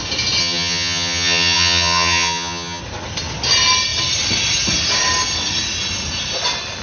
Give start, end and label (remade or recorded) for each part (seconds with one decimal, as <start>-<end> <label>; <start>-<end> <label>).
0.0-0.4 recorded; 0.4-2.8 remade; 2.8-6.8 recorded